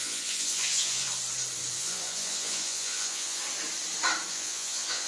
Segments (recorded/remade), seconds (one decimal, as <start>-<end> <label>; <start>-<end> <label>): 0.0-1.1 remade; 1.1-1.7 recorded; 1.7-3.4 remade; 3.4-4.3 recorded; 4.3-5.1 remade